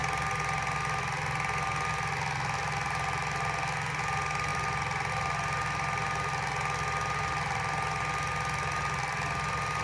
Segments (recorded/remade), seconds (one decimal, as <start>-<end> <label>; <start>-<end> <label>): 0.0-9.8 recorded